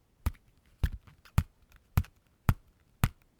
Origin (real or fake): real